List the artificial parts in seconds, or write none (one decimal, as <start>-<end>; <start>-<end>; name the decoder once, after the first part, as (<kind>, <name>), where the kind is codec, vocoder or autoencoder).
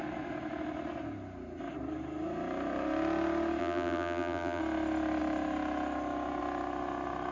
3.6-4.6 (vocoder, BigVGAN v2)